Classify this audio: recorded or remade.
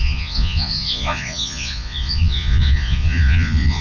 remade